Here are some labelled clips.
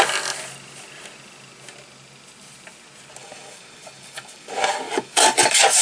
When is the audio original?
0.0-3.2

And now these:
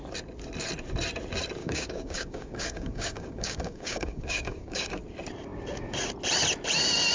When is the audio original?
0.0-1.6; 5.0-7.1